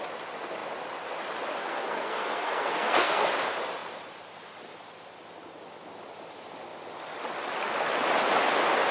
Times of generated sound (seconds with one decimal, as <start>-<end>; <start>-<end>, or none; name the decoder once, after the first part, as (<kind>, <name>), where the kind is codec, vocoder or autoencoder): 1.6-3.3 (codec, SNAC)